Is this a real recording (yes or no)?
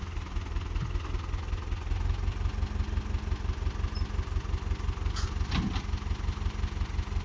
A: yes